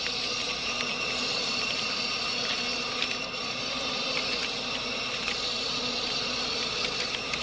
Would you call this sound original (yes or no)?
yes